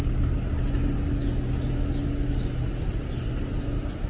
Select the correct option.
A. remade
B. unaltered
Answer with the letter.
B